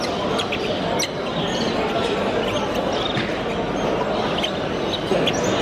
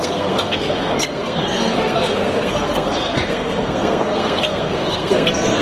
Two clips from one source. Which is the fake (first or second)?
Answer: second